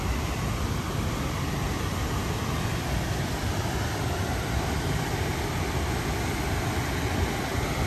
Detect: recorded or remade recorded